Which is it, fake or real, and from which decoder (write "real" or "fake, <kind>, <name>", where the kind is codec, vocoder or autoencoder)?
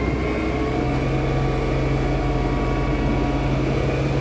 real